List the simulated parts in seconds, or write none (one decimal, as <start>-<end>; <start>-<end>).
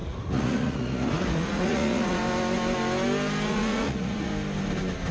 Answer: 0.0-2.2; 3.5-4.3